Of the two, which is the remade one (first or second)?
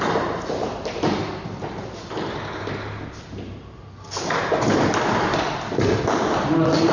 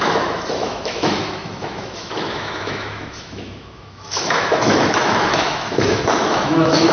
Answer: second